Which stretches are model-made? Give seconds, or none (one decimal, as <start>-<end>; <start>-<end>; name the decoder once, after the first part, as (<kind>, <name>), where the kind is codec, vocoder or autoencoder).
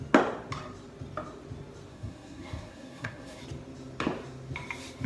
1.9-3.4 (codec, SNAC)